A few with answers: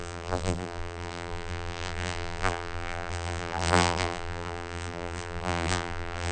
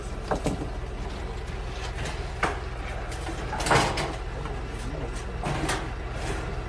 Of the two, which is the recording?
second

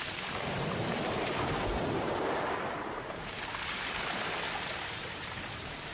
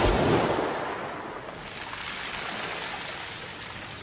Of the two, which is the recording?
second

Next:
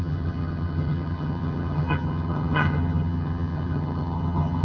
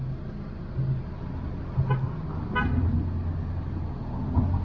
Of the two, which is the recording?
second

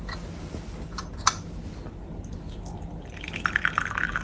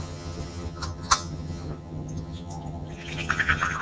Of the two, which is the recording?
first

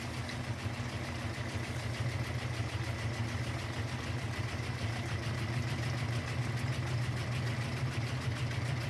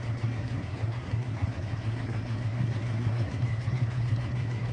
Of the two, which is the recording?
first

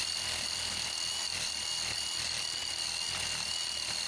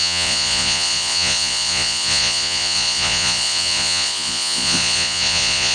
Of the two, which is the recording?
first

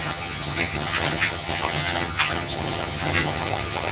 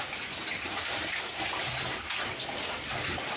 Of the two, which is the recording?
second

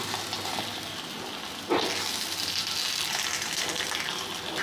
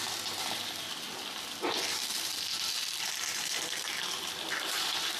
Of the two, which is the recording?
first